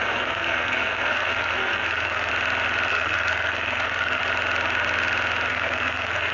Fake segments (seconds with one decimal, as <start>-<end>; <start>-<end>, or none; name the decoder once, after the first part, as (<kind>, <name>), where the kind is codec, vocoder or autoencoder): 0.0-2.3 (codec, SNAC); 2.9-4.2; 5.5-6.3